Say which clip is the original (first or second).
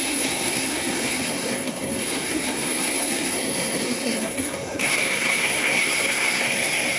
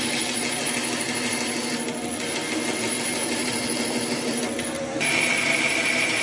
second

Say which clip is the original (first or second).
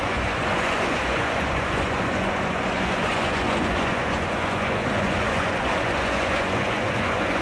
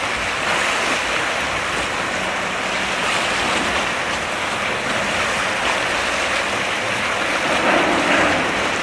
second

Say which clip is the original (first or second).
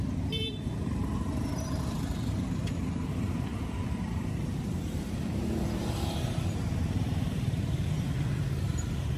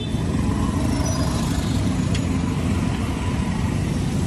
second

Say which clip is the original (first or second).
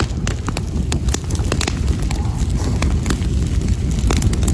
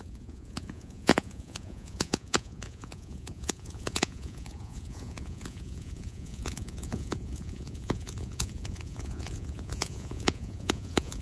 first